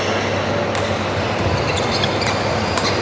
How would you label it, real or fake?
real